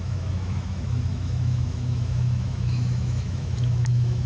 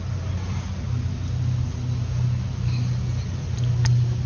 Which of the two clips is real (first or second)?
second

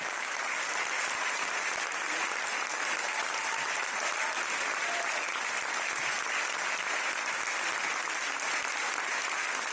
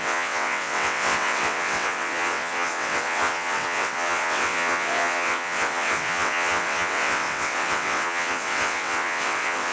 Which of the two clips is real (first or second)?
first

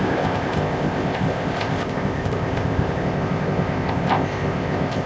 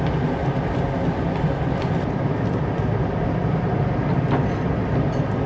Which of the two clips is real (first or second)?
second